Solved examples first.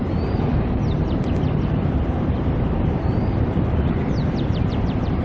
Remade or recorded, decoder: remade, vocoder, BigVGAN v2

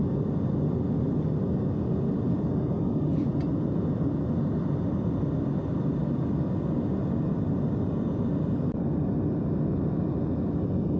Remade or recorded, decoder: recorded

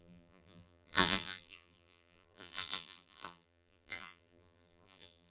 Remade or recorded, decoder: remade, vocoder, BigVGAN v2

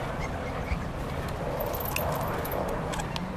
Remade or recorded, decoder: recorded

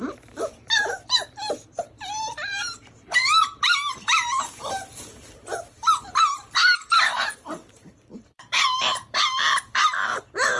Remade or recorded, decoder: remade, vocoder, BigVGAN v2